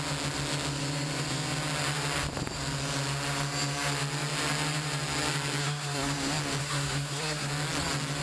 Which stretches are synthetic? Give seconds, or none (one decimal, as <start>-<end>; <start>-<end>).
5.6-6.1; 6.6-7.5

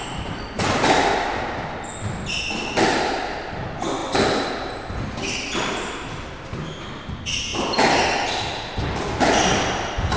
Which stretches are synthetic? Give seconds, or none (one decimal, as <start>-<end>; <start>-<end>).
none

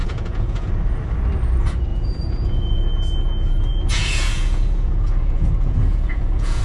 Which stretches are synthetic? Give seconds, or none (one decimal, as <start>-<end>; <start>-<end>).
0.0-0.7; 1.9-2.8; 3.7-6.6

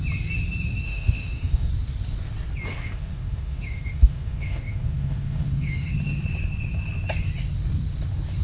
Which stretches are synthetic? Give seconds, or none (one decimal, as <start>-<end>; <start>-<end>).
0.8-1.7; 2.7-5.9